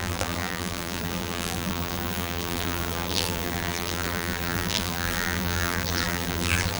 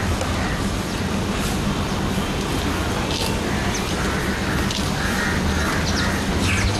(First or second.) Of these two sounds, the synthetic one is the first